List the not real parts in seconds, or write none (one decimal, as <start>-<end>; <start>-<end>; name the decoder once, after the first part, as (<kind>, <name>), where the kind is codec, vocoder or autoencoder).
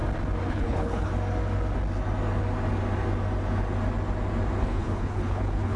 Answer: 0.5-1.1 (codec, HILCodec); 4.6-5.8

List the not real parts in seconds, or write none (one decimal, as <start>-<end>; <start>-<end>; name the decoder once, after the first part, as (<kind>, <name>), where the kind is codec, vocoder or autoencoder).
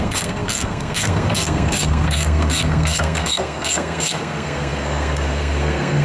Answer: 0.0-6.0 (codec, SNAC)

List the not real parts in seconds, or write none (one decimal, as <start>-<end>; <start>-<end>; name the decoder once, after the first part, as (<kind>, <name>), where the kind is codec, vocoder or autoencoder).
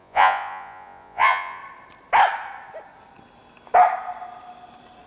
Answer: 0.0-1.6 (vocoder, Vocos)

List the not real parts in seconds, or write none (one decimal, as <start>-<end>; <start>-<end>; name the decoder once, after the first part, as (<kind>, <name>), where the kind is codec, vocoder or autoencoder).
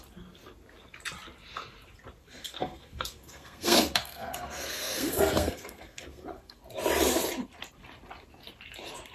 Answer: 2.2-6.6 (codec, SNAC)